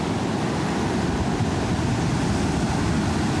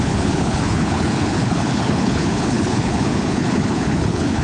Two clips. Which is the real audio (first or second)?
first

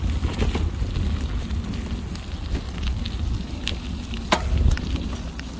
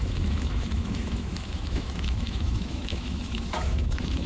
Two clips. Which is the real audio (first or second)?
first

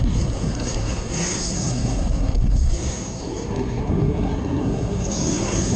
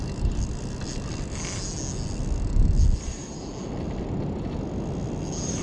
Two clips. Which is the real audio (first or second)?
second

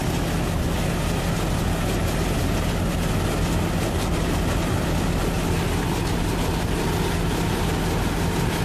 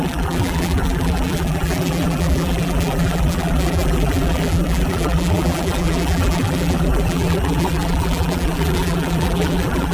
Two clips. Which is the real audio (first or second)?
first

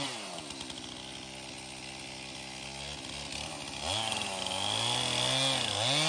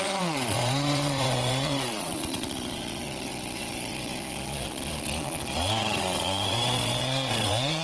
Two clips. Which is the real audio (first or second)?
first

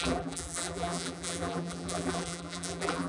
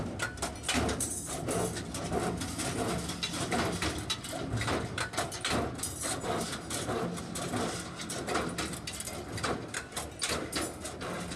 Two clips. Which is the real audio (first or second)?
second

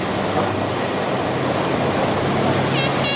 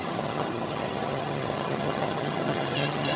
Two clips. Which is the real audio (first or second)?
first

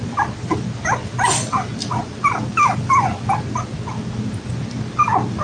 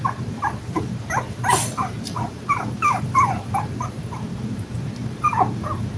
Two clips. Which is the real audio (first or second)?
first